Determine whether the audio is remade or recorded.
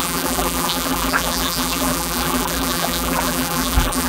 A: remade